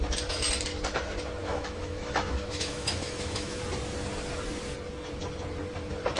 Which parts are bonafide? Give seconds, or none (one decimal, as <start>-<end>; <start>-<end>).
0.0-1.4; 3.6-6.2